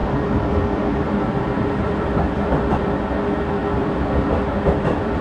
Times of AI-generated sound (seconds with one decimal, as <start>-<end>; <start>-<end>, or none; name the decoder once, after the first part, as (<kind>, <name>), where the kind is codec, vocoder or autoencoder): 0.0-3.1 (vocoder, BigVGAN v2); 3.6-5.2